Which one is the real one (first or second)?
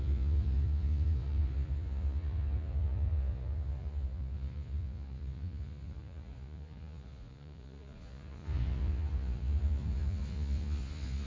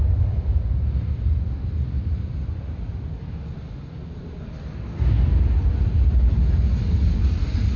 second